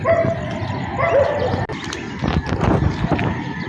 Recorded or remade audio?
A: recorded